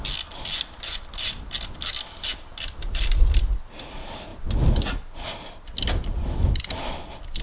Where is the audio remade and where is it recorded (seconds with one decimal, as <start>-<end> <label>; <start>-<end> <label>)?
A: 0.0-7.4 recorded